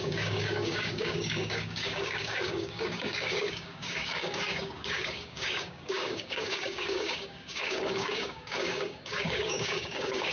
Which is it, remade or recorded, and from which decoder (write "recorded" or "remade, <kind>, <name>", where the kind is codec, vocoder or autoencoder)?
remade, codec, DAC